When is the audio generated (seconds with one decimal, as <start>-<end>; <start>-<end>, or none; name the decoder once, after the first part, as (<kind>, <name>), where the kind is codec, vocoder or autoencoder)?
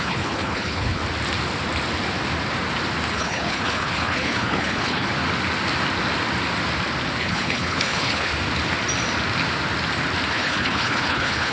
0.0-1.0 (codec, HILCodec); 3.1-5.1; 7.2-8.3; 10.3-11.5